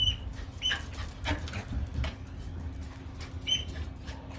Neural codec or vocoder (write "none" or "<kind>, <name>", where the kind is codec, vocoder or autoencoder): none